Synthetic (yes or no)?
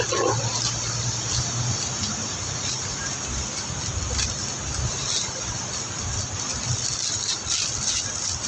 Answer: no